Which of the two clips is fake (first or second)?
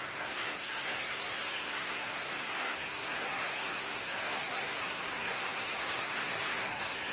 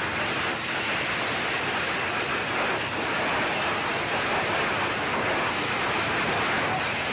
first